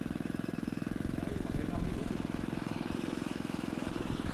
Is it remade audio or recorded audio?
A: remade